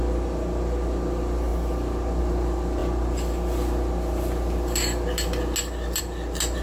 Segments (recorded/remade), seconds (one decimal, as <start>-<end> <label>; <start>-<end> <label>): 0.0-6.6 recorded

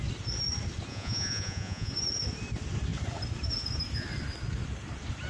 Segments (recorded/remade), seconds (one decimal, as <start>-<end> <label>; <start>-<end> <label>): 0.0-0.9 recorded; 0.9-1.9 remade; 1.9-5.3 recorded

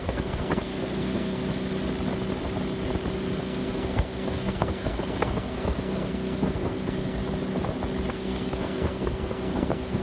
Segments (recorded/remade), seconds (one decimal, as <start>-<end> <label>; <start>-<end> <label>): 0.0-1.4 remade; 1.4-3.4 recorded; 3.4-7.2 remade; 7.2-8.1 recorded; 8.1-10.0 remade